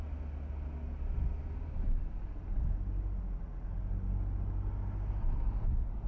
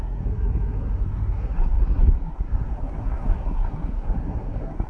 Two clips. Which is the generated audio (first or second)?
second